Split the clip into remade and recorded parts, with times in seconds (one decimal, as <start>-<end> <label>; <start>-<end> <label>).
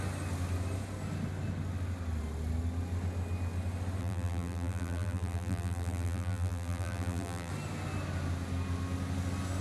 0.0-4.0 recorded; 4.0-7.5 remade; 7.5-9.6 recorded